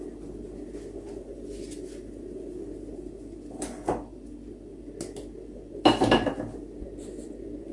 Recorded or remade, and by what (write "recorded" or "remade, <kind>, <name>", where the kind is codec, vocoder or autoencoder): recorded